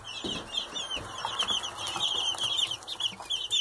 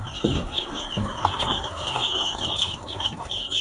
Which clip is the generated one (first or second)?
second